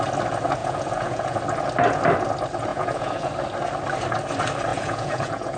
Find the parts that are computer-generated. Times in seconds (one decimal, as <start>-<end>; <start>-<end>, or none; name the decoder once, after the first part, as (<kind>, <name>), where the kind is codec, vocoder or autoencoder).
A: 0.6-1.4 (vocoder, Vocos); 2.7-3.3; 4.7-5.6